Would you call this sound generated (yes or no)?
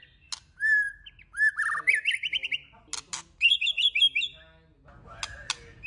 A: no